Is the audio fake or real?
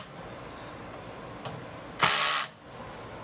real